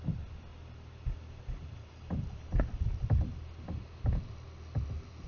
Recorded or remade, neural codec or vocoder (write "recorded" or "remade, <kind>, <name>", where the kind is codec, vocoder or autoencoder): recorded